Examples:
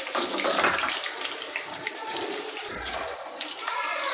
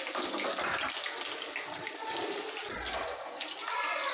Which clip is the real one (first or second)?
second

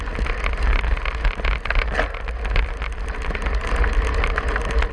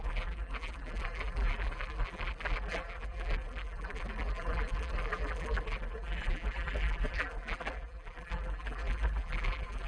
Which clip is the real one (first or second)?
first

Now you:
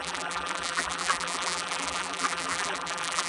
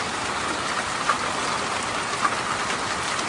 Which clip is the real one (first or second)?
second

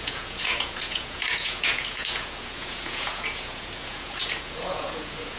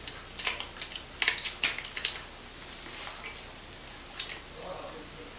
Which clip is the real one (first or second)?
second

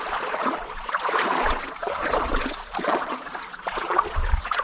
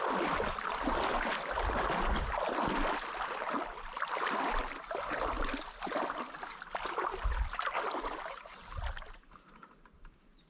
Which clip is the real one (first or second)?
second